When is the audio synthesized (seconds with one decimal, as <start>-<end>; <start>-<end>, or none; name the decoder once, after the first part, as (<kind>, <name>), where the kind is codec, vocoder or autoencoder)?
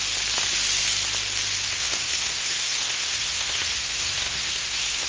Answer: 1.7-5.1 (codec, SNAC)